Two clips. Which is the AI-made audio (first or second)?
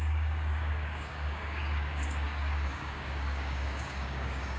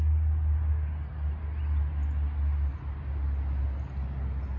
first